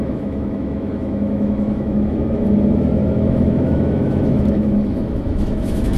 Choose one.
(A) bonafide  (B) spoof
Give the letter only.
B